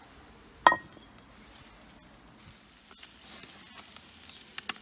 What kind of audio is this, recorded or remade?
recorded